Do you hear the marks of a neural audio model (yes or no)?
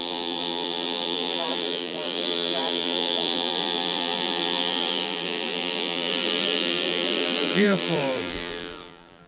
yes